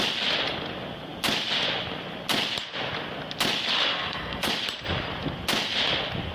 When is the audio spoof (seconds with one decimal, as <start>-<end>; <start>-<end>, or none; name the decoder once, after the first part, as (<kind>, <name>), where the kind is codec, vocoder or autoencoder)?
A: 3.9-4.5 (codec, SNAC)